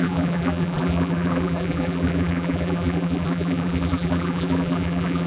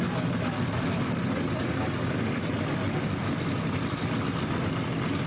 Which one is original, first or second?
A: second